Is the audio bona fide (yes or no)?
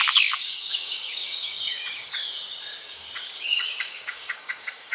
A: no